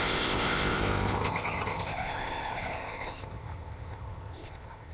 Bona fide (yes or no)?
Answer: no